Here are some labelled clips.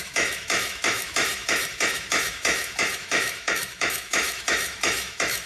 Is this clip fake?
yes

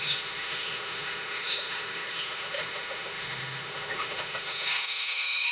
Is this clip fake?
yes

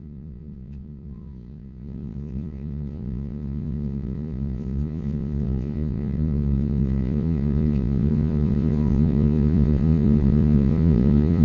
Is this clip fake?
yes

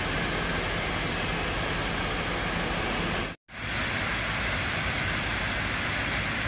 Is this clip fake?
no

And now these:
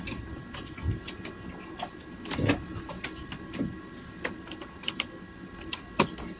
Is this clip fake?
no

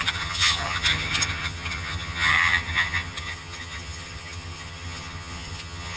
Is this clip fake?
yes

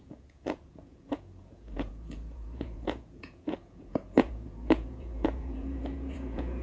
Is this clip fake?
yes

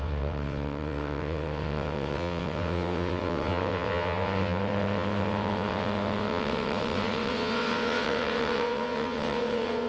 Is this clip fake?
yes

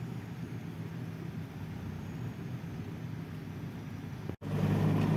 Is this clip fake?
no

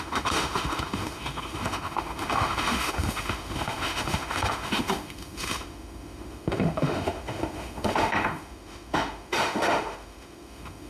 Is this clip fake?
yes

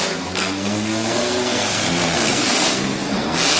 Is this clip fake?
yes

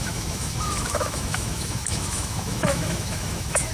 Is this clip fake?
yes